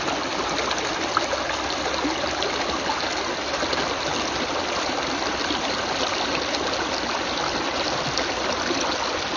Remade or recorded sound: recorded